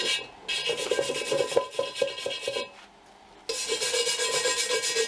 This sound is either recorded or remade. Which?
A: recorded